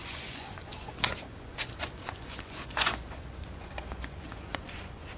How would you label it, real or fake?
fake